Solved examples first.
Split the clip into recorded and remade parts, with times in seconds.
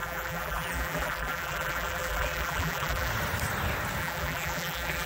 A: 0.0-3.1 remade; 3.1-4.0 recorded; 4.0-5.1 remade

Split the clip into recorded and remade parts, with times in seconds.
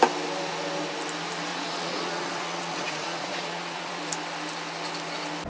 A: 0.0-1.5 recorded; 1.5-4.0 remade; 4.0-5.5 recorded